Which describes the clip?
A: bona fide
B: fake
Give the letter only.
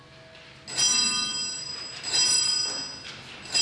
A